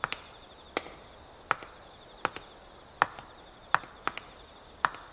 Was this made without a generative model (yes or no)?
yes